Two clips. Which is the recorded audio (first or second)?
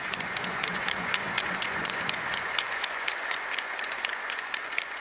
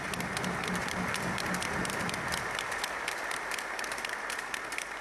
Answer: second